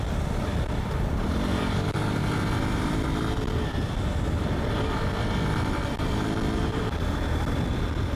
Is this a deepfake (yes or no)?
yes